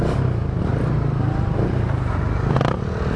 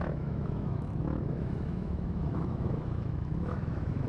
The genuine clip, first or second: first